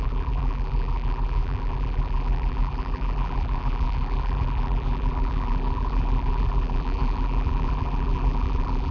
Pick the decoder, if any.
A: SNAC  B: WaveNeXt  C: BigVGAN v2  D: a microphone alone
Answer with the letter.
C